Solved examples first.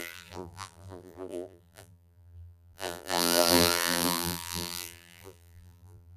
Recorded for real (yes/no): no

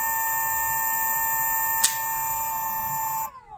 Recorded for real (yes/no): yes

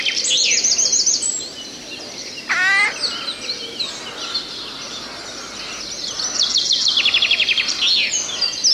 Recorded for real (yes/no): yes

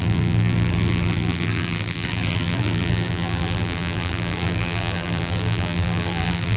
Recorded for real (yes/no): no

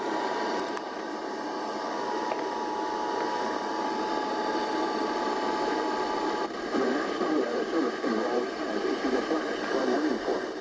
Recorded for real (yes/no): no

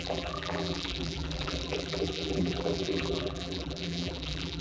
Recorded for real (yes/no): no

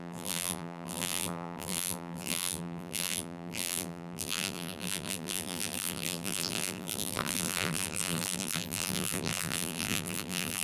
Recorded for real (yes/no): no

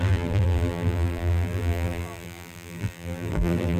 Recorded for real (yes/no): no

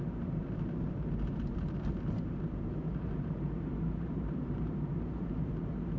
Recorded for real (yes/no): no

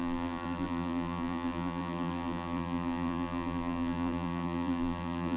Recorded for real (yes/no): no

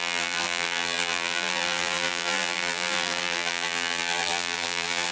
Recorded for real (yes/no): no